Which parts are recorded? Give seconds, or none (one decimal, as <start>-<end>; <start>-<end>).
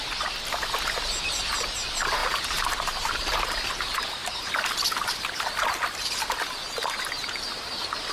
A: 0.0-2.2; 3.5-8.1